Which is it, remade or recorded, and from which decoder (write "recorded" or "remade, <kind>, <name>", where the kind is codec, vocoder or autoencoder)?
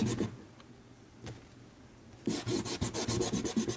recorded